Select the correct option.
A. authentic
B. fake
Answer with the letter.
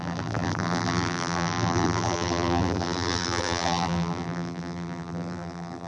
B